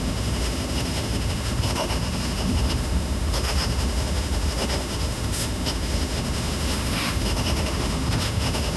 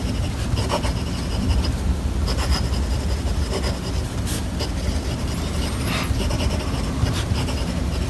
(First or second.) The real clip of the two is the second